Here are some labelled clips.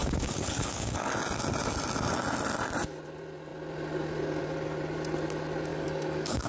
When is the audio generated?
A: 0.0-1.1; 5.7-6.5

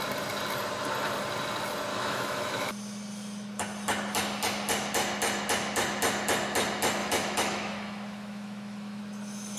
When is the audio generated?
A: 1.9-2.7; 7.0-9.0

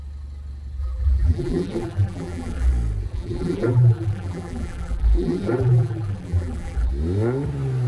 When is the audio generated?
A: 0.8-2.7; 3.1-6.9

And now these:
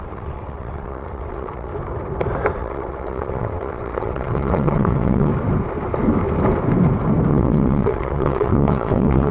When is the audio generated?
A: 0.0-1.7; 2.6-5.3; 7.3-9.3